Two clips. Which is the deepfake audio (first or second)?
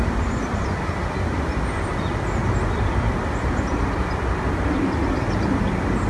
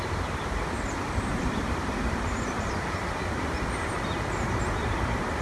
second